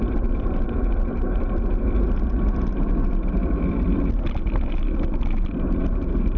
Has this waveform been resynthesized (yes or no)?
yes